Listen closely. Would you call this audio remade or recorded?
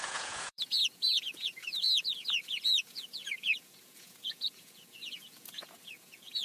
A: remade